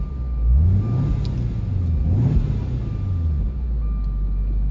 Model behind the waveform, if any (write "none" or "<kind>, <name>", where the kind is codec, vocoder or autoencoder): none